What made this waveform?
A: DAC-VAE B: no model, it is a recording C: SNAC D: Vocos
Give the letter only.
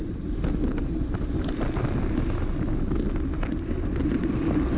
B